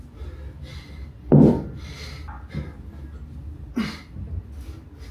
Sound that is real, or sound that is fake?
real